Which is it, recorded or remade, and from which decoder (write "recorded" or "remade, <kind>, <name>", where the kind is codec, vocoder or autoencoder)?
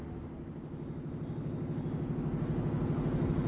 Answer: recorded